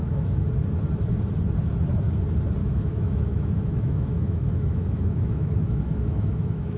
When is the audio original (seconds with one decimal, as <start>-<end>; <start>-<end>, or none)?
0.5-2.6